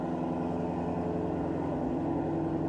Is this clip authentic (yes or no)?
yes